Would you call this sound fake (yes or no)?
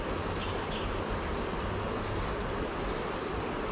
no